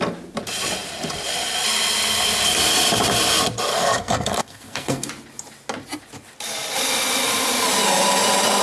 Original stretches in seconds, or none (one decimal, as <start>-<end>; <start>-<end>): 0.0-3.7; 5.1-8.6